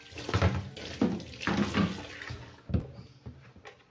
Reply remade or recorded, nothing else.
recorded